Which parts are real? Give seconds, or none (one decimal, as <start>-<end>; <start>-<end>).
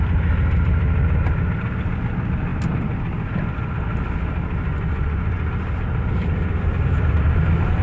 0.0-4.7; 5.5-7.8